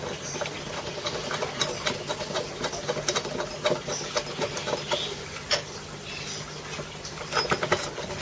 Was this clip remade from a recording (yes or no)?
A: no